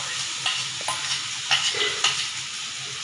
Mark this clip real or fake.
real